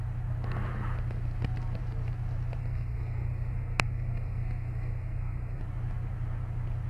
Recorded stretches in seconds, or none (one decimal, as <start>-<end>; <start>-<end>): 0.0-2.6; 5.6-6.9